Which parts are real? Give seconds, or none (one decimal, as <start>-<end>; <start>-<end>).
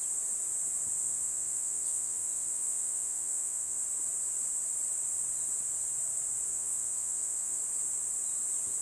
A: 0.0-1.0; 3.8-6.5; 7.6-8.8